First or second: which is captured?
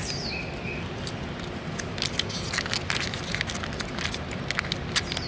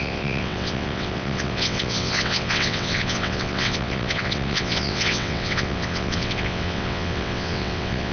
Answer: first